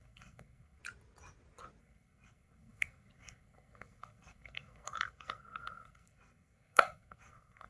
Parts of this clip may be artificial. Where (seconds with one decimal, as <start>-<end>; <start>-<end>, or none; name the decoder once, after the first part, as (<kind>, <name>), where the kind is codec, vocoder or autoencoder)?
0.0-0.8 (codec, SNAC); 1.8-7.7